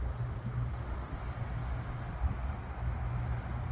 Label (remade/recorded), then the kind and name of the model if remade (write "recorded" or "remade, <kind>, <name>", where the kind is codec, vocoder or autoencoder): recorded